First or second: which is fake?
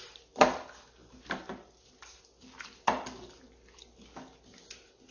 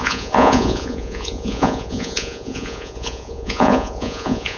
second